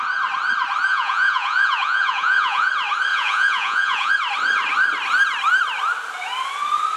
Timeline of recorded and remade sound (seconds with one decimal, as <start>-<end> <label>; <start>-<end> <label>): 0.0-0.9 recorded; 0.9-2.7 remade; 2.7-3.1 recorded; 3.1-4.1 remade; 4.1-7.0 recorded